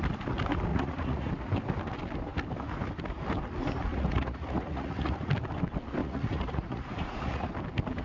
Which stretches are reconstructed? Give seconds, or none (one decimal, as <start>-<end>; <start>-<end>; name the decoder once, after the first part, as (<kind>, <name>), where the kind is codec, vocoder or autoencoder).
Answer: 0.7-1.3 (vocoder, Vocos); 3.9-5.3; 6.0-7.5